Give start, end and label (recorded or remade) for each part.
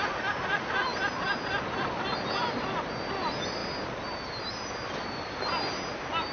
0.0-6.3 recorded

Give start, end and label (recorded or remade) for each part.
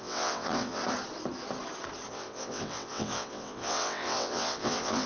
0.0-0.8 remade; 0.8-2.1 recorded; 2.1-5.1 remade